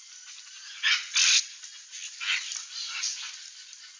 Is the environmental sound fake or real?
real